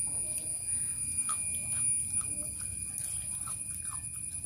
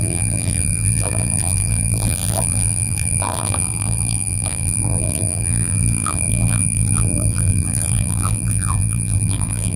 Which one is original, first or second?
first